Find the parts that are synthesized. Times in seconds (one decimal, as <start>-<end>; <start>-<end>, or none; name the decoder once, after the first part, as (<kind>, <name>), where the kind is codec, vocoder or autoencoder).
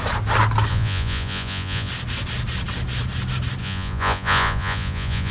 0.7-1.9 (vocoder, Vocos); 3.6-5.3